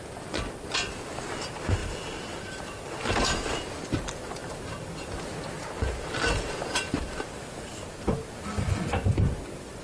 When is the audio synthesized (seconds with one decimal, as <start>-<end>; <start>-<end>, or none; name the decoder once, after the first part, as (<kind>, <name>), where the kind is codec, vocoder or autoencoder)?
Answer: none